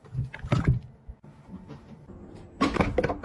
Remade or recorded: recorded